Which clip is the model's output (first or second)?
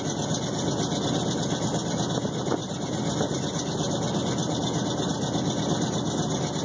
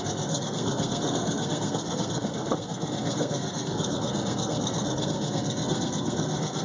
second